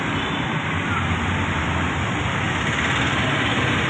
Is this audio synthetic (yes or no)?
no